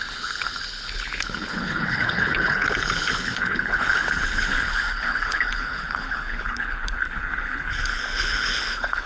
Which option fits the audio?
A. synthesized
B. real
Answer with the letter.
A